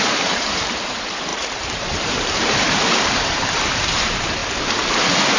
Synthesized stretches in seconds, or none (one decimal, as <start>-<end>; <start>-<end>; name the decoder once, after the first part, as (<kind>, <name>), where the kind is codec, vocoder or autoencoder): 0.0-5.4 (vocoder, BigVGAN v2)